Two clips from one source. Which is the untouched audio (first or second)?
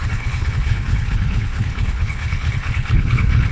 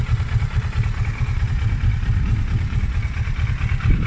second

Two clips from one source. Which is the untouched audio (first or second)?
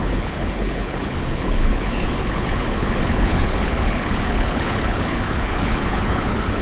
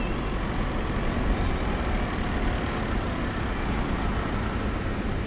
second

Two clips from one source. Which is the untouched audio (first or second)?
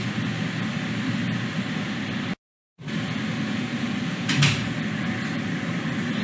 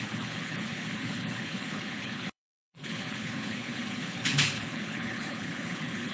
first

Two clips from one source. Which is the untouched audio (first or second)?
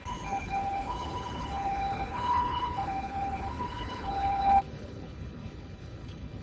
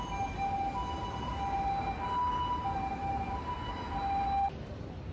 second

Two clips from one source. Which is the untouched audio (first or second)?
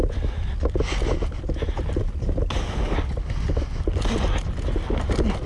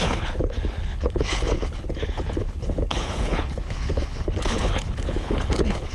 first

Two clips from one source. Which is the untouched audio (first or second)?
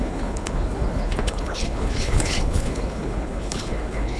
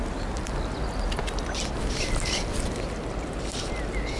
second